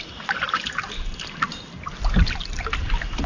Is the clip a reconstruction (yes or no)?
no